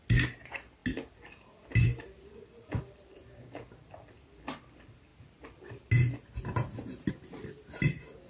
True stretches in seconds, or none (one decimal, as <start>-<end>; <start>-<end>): 0.0-0.8; 4.6-8.3